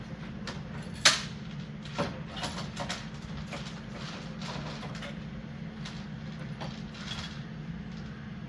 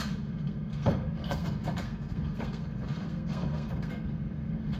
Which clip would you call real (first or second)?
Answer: first